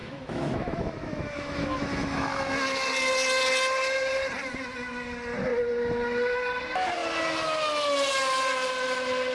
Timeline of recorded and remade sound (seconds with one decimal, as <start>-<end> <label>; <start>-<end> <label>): 0.0-2.5 remade; 2.5-9.3 recorded